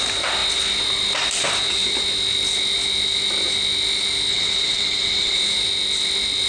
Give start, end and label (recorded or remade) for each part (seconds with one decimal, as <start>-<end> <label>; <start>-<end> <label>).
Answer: 0.0-4.3 recorded; 4.3-5.4 remade; 5.4-6.5 recorded